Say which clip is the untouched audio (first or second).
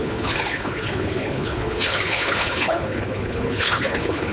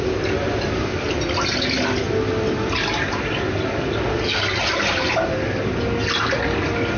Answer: second